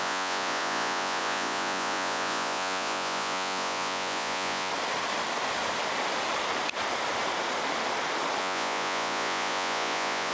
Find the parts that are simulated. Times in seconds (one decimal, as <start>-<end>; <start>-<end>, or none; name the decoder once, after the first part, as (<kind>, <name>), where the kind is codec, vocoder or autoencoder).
0.0-4.7 (vocoder, Vocos); 8.4-10.3